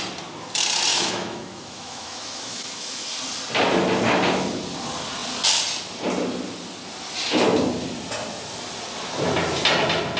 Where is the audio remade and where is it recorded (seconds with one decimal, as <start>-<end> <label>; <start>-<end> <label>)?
0.0-0.9 recorded; 0.9-3.0 remade; 3.0-10.2 recorded

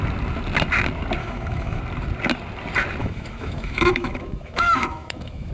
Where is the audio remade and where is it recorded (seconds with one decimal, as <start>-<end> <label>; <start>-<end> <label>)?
0.0-1.2 recorded; 1.2-1.8 remade; 1.8-3.0 recorded; 3.0-5.5 remade

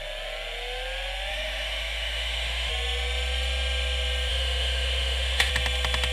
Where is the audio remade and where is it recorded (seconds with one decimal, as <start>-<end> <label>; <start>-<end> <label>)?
0.0-1.3 recorded; 1.3-2.7 remade; 2.7-4.3 recorded; 4.3-5.5 remade; 5.5-6.1 recorded

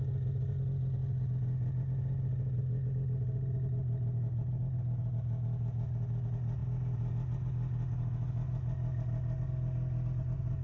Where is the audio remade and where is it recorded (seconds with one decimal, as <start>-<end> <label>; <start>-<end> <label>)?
0.0-10.6 recorded

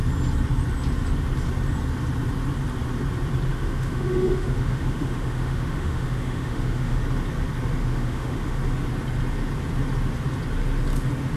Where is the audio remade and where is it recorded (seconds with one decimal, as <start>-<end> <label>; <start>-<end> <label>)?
0.0-3.5 recorded; 3.5-7.0 remade; 7.0-7.8 recorded; 7.8-8.6 remade; 8.6-11.4 recorded

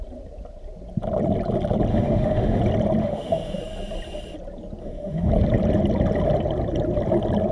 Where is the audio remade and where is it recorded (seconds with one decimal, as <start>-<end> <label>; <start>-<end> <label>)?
0.0-1.9 recorded; 1.9-2.6 remade; 2.6-3.0 recorded; 3.0-3.6 remade; 3.6-4.8 recorded; 4.8-5.3 remade; 5.3-7.5 recorded